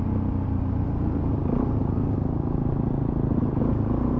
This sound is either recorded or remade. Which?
recorded